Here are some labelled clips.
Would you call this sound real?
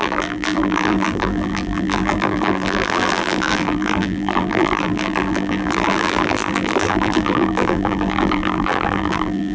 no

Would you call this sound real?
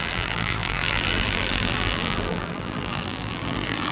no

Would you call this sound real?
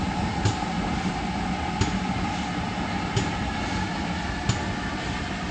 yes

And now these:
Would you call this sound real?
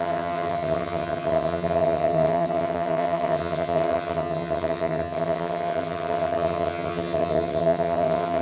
no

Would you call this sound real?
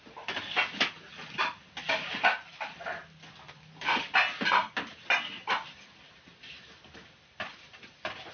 yes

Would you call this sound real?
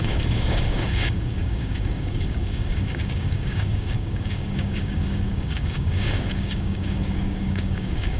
no